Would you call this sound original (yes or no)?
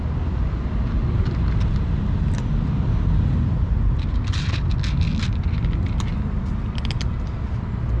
yes